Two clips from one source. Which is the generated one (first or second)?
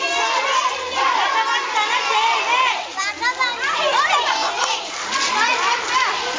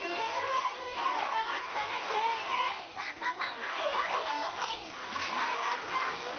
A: second